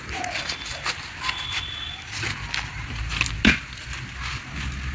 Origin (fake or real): real